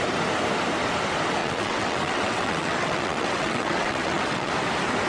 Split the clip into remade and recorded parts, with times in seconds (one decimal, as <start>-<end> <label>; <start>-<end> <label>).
0.0-1.4 recorded; 1.4-4.5 remade; 4.5-5.1 recorded